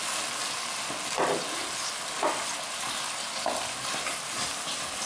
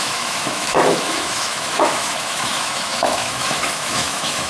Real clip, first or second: first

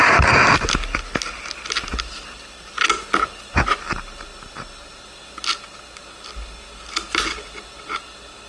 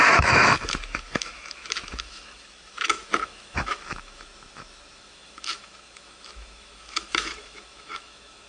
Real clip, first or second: first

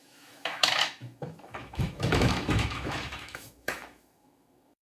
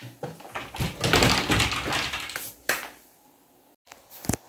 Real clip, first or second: second